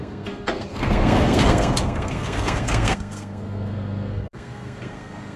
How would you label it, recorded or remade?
remade